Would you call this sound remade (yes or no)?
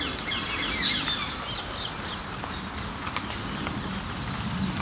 no